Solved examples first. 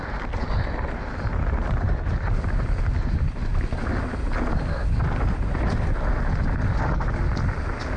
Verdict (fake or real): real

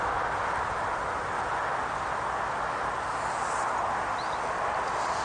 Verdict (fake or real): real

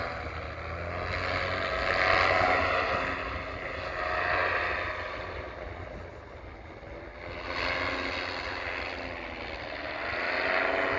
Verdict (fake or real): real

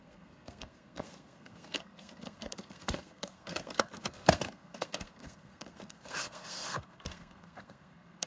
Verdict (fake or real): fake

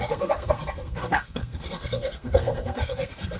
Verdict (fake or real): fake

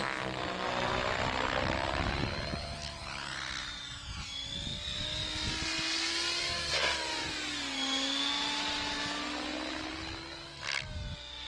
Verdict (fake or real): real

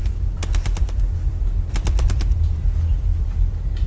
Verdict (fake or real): real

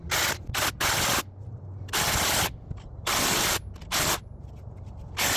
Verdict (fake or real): real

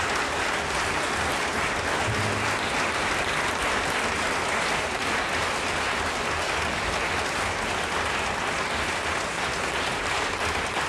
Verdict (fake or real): real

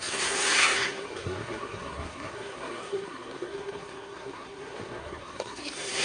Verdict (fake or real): fake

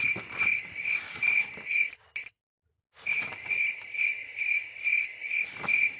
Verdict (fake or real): real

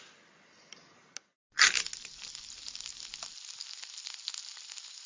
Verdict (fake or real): real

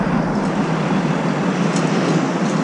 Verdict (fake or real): real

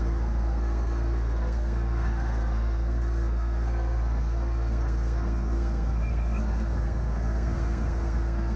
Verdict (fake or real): fake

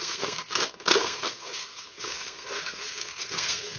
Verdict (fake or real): fake